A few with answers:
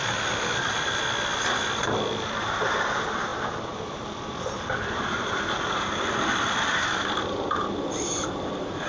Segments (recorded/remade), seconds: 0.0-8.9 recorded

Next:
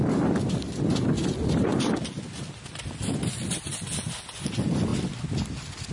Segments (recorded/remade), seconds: 0.0-5.9 recorded

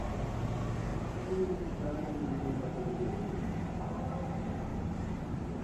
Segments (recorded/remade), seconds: 0.0-0.9 recorded; 0.9-3.8 remade; 3.8-4.7 recorded; 4.7-5.6 remade